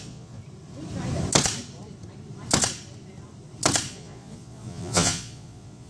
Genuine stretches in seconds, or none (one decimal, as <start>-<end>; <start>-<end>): 0.4-3.9